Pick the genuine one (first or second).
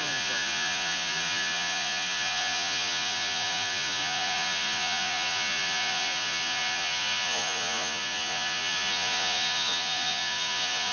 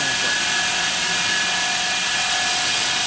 second